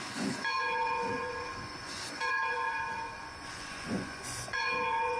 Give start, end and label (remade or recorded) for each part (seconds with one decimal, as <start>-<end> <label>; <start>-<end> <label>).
0.0-5.2 remade